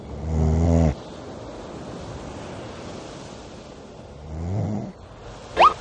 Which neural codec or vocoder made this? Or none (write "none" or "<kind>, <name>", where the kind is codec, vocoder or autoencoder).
none